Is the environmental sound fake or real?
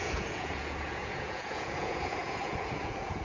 fake